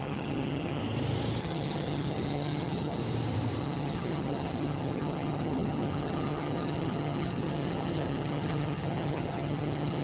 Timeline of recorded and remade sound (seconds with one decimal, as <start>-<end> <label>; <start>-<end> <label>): 0.0-0.8 remade; 0.8-1.4 recorded; 1.4-3.0 remade; 3.0-3.6 recorded; 3.6-10.0 remade